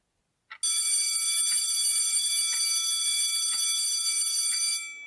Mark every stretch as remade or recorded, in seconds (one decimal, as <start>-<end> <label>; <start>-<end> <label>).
0.0-5.1 recorded